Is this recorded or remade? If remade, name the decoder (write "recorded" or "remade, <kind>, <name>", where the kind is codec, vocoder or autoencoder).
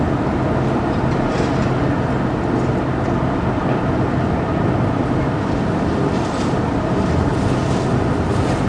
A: recorded